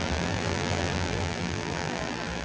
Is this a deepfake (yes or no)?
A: yes